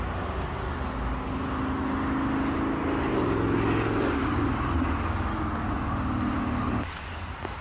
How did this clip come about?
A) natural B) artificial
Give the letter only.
A